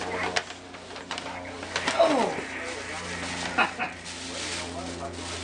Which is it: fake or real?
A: real